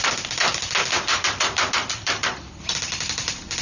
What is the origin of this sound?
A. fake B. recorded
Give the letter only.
A